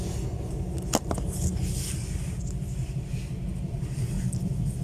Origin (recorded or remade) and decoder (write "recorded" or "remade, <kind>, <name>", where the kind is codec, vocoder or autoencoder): recorded